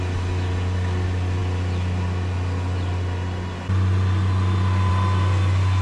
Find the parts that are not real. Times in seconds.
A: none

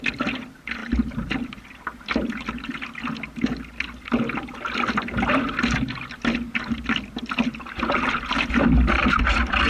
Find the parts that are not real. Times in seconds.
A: none

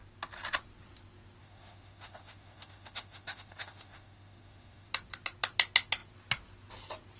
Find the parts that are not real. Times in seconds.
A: 1.4-4.9 (autoencoder, DAC-VAE)

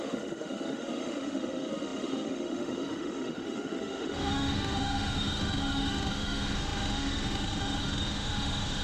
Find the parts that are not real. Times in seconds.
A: 0.0-8.8 (autoencoder, DAC-VAE)

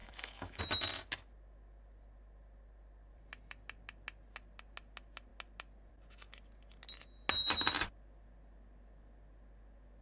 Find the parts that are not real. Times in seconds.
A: 0.0-0.6 (autoencoder, DAC-VAE)

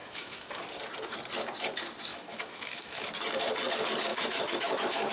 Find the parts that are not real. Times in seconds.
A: 0.0-0.6 (autoencoder, DAC-VAE); 2.1-3.1; 4.1-5.1

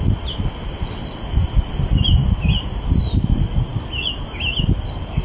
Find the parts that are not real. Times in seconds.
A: none